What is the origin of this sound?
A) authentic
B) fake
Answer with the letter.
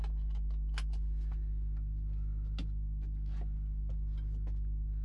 A